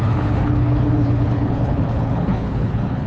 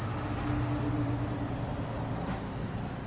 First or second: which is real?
second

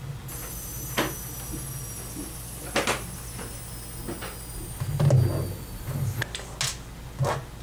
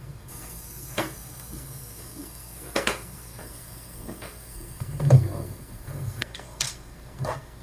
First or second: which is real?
first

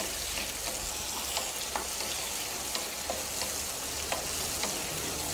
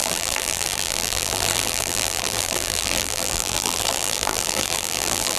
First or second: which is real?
first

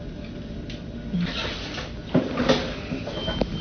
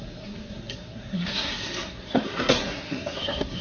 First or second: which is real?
first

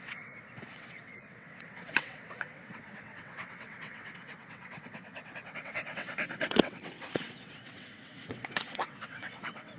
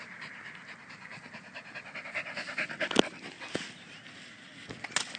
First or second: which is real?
second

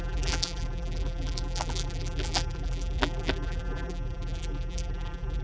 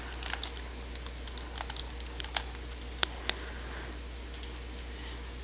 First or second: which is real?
second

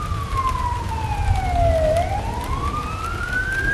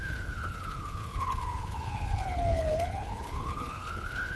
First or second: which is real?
first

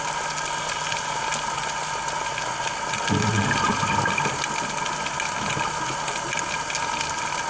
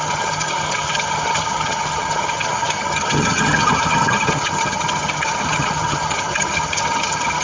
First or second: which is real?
first